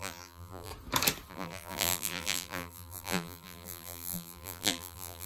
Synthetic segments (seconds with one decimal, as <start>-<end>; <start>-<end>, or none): 0.0-0.7; 1.3-5.3